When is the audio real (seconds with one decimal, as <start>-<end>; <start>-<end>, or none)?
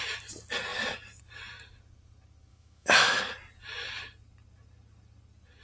0.0-2.5; 3.2-5.6